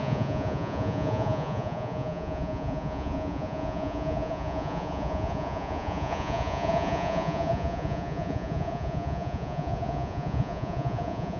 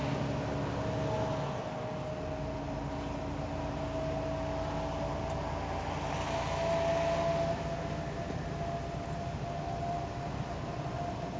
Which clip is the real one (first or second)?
second